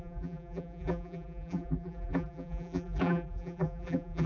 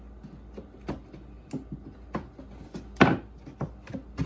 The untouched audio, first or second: second